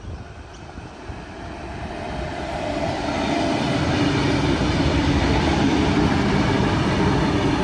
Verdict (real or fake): fake